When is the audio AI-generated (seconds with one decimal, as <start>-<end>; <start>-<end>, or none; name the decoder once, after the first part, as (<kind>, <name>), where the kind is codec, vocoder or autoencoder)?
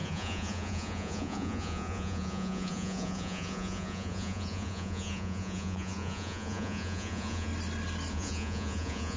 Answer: 0.0-7.5 (vocoder, Vocos); 8.1-9.2